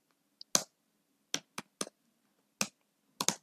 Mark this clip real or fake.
real